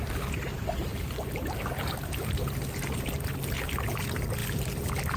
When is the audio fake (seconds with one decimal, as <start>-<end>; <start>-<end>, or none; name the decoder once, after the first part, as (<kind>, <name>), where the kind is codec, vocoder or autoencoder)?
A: 4.4-5.2 (vocoder, BigVGAN v2)